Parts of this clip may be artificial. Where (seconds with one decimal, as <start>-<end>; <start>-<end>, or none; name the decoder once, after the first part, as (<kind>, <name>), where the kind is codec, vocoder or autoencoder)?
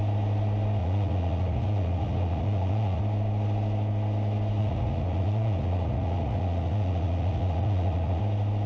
0.8-3.0 (vocoder, Vocos); 4.6-8.2